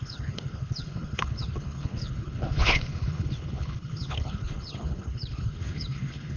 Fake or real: fake